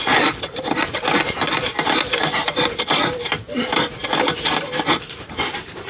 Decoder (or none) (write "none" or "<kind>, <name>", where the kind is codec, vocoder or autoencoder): none